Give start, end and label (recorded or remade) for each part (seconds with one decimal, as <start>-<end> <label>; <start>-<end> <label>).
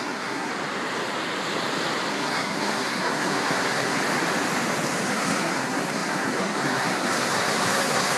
0.0-0.5 remade; 0.5-2.1 recorded; 2.1-4.0 remade; 4.0-5.1 recorded; 5.1-8.2 remade